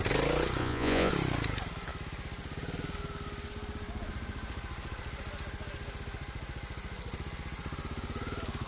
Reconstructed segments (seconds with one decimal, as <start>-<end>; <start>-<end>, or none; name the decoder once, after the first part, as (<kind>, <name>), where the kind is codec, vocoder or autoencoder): 0.6-1.1 (vocoder, Vocos)